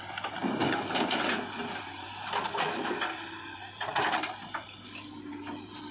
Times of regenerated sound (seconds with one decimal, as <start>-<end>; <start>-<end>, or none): none